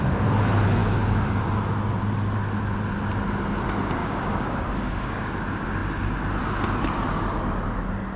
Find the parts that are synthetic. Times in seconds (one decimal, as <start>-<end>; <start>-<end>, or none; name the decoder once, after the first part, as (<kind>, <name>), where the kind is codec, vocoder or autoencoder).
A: 0.8-1.5 (codec, DAC); 4.0-5.3